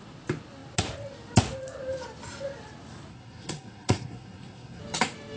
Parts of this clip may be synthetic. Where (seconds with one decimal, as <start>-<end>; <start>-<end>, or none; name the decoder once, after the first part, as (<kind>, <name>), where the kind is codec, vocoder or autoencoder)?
3.1-4.8 (codec, SNAC)